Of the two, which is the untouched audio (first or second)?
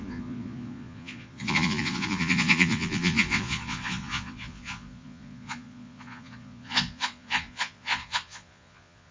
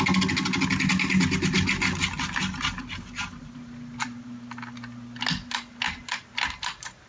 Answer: second